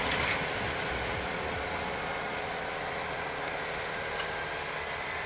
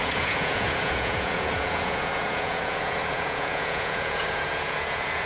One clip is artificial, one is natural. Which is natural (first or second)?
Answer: first